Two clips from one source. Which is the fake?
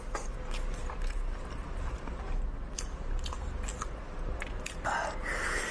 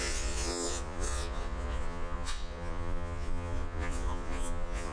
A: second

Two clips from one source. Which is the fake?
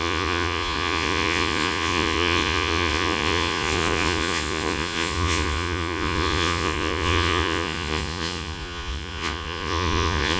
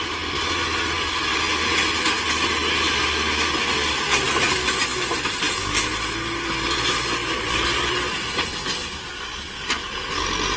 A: first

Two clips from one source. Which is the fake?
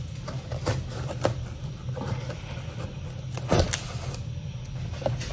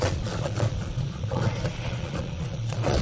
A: second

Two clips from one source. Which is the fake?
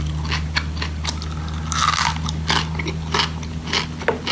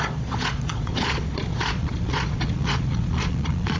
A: second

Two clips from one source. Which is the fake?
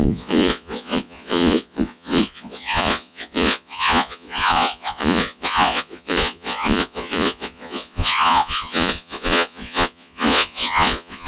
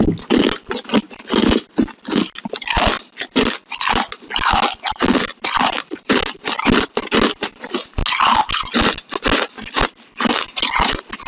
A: first